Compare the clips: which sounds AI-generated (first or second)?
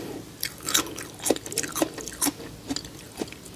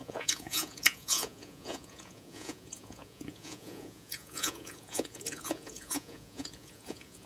second